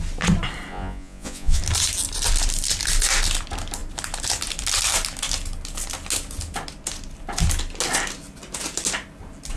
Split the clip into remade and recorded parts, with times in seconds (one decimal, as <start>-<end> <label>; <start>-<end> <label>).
0.0-0.7 recorded; 0.7-1.6 remade; 1.6-9.6 recorded